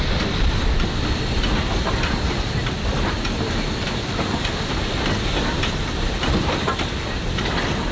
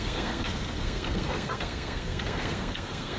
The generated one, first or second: second